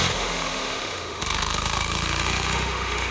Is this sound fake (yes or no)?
yes